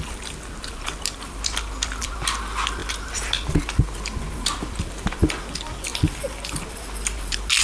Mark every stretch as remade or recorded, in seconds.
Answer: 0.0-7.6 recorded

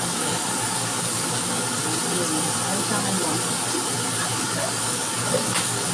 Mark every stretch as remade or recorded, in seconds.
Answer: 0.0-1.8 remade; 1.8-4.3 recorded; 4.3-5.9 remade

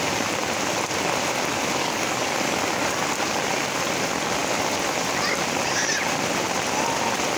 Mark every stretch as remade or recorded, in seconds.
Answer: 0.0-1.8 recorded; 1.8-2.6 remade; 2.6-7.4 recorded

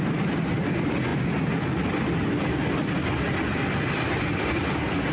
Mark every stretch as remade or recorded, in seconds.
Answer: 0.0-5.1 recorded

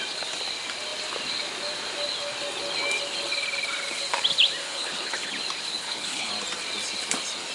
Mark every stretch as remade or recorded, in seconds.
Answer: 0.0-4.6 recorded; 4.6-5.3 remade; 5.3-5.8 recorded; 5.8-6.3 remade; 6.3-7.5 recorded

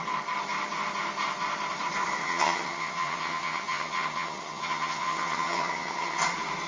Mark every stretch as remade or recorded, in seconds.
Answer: 0.0-2.2 recorded; 2.2-6.2 remade; 6.2-6.7 recorded

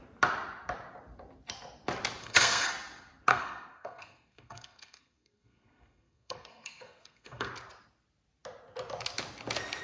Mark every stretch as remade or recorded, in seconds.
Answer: 0.0-2.2 recorded; 2.2-2.7 remade; 2.7-3.3 recorded; 3.3-7.5 remade; 7.5-9.8 recorded

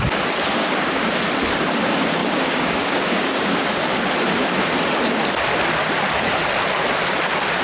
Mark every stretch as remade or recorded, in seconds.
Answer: 0.0-0.6 recorded; 0.6-1.2 remade; 1.2-2.2 recorded; 2.2-3.8 remade; 3.8-7.6 recorded